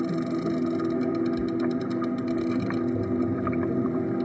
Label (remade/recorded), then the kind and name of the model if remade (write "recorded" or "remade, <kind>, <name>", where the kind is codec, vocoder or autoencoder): recorded